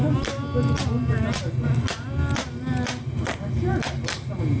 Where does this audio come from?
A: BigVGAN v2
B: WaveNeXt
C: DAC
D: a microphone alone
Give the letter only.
D